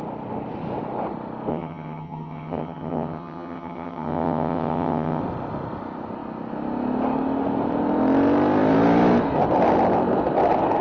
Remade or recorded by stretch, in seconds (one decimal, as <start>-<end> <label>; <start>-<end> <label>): 0.0-1.5 recorded; 1.5-5.2 remade; 5.2-10.8 recorded